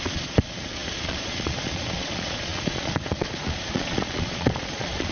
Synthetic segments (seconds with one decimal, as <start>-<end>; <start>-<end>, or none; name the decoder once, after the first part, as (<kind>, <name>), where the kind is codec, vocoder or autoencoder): 0.0-5.1 (vocoder, Vocos)